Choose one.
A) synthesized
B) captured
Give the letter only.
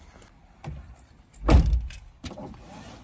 B